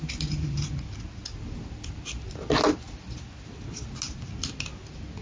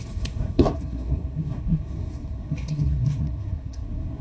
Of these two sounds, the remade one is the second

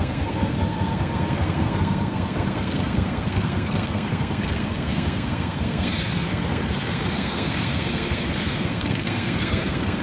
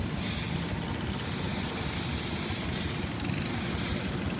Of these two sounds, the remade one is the first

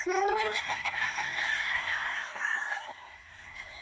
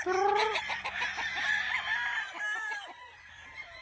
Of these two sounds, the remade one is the first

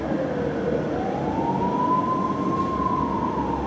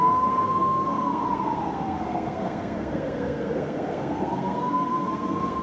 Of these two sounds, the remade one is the second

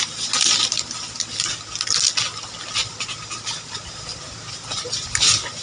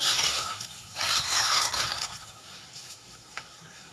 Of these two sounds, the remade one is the second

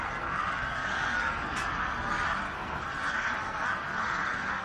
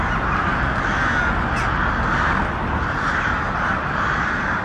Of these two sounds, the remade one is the first